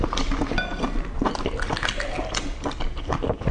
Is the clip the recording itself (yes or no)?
yes